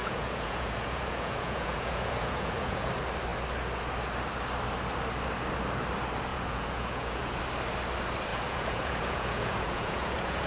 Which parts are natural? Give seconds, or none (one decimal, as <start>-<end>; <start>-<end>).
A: 2.9-6.3; 7.4-8.3